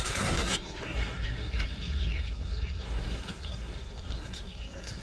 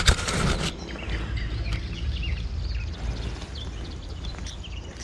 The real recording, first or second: second